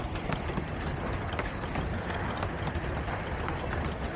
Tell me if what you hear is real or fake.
real